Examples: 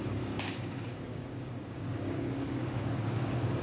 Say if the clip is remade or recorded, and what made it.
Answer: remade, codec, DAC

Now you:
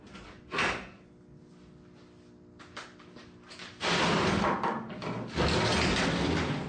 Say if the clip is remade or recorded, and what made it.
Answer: recorded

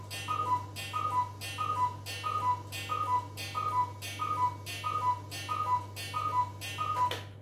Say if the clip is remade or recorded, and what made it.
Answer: recorded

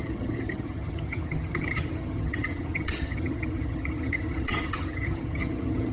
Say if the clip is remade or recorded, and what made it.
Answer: remade, vocoder, HiFi-GAN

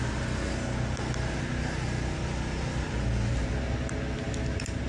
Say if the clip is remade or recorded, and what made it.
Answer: recorded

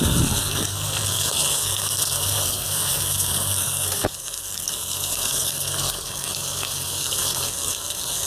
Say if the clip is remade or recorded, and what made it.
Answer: remade, codec, SNAC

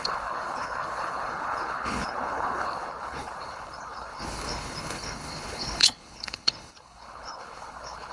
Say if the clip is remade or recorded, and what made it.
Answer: remade, codec, HILCodec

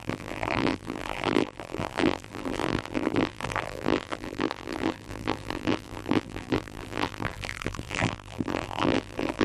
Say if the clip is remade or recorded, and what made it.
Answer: remade, vocoder, BigVGAN v2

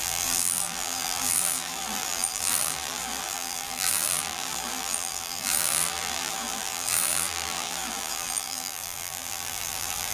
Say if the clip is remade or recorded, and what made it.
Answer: remade, vocoder, BigVGAN v2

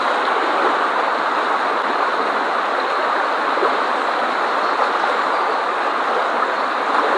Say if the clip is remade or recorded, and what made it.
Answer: recorded